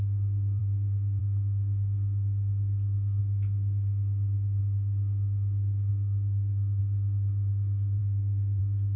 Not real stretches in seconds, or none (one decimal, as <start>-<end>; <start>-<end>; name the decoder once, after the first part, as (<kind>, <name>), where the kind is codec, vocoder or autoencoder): 0.6-1.2 (autoencoder, DAC-VAE); 5.9-6.8; 8.0-8.6